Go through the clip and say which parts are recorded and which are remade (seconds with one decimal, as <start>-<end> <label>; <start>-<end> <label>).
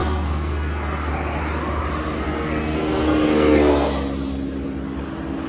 0.0-1.1 remade; 1.1-2.2 recorded; 2.2-3.9 remade; 3.9-5.5 recorded